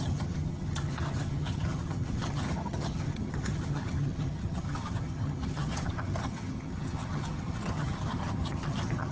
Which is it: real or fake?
fake